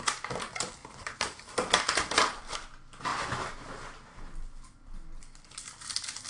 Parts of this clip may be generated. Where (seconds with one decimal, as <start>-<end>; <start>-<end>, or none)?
0.8-1.4